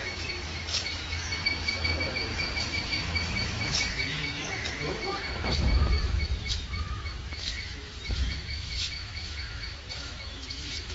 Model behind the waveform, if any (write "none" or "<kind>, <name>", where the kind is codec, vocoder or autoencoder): autoencoder, DAC-VAE